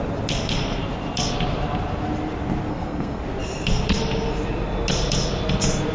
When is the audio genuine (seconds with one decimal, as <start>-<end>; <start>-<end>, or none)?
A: 0.0-2.7; 3.2-5.9